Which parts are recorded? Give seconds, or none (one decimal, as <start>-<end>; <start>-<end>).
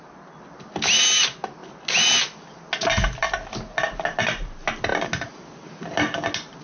0.0-6.6